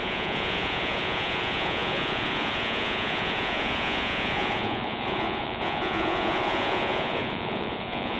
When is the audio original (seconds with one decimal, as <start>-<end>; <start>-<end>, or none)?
none